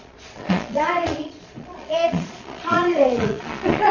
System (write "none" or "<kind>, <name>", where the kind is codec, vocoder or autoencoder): vocoder, Vocos